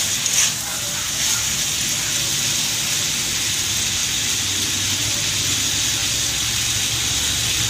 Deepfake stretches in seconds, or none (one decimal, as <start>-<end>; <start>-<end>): none